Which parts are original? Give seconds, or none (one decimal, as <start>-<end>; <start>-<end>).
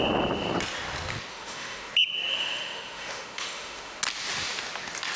0.0-1.3; 1.9-2.3; 4.0-5.2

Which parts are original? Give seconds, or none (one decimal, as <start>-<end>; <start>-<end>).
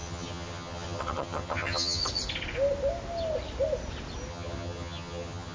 2.0-4.3